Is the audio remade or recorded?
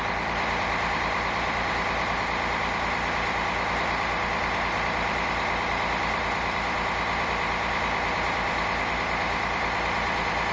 recorded